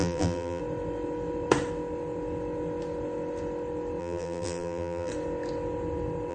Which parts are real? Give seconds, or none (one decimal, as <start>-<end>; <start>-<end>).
0.6-4.0; 5.1-6.3